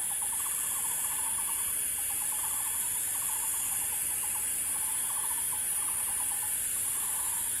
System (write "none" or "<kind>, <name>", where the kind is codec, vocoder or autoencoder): none